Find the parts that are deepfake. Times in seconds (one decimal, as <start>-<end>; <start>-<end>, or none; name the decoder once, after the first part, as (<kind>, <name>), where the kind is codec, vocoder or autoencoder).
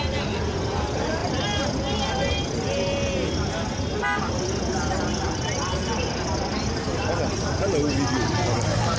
none